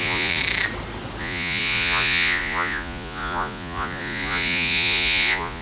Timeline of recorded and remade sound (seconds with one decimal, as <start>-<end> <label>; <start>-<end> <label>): 0.0-0.4 remade; 0.4-1.2 recorded; 1.2-5.6 remade